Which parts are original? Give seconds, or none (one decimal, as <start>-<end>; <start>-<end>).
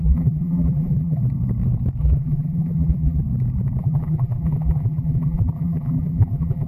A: 1.2-2.0; 3.2-3.8